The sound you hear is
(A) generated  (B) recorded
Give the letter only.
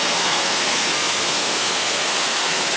A